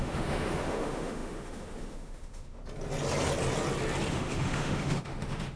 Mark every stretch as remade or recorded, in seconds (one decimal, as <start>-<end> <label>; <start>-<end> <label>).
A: 0.0-2.6 remade; 2.6-4.1 recorded; 4.1-5.6 remade